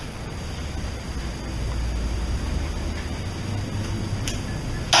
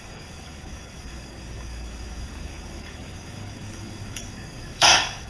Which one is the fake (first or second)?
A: second